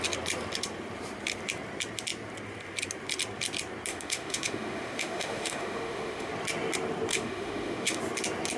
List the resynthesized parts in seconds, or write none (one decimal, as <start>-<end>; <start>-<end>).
3.9-6.3; 7.1-8.0